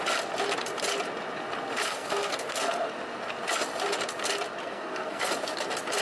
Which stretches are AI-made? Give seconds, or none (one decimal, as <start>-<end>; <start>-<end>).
1.8-2.9; 4.6-5.3